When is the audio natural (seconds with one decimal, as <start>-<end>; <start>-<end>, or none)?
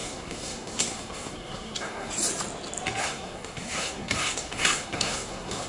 2.1-3.0